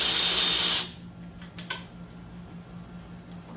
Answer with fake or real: real